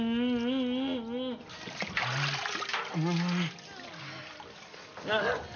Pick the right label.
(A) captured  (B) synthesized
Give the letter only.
A